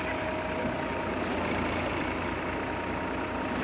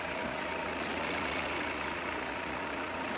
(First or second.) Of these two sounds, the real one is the first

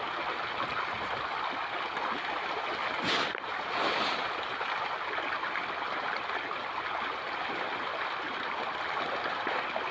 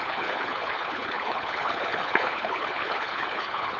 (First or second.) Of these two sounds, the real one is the first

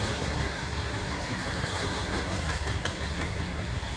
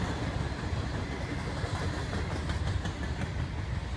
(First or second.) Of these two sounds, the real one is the second